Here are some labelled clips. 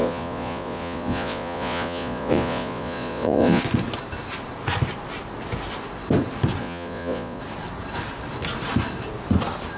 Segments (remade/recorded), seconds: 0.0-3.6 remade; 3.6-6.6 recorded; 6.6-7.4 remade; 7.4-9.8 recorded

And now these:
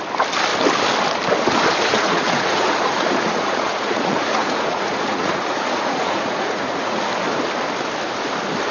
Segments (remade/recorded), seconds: 0.0-1.8 recorded; 1.8-7.0 remade; 7.0-8.7 recorded

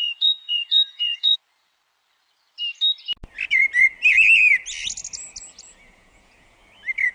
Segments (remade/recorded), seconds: 0.0-1.4 remade; 1.4-5.7 recorded; 5.7-6.6 remade; 6.6-7.1 recorded